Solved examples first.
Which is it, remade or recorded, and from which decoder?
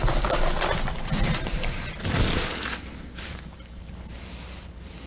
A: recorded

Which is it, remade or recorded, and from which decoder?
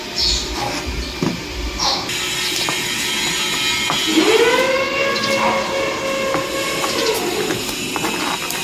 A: recorded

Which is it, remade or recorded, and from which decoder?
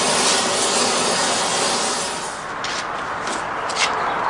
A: recorded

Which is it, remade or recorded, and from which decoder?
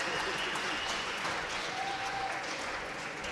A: remade, vocoder, Vocos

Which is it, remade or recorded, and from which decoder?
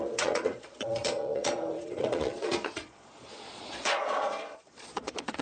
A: remade, vocoder, Vocos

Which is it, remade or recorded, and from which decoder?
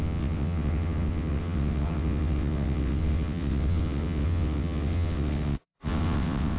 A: remade, vocoder, WaveNeXt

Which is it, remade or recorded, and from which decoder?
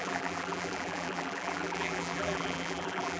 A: remade, vocoder, BigVGAN v2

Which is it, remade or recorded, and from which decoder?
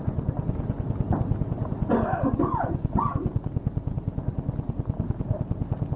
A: recorded